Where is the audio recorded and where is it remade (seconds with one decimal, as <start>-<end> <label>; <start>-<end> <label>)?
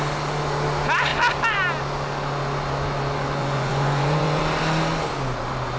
0.0-3.4 recorded; 3.4-4.4 remade; 4.4-5.8 recorded